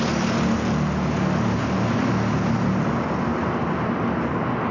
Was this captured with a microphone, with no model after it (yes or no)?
yes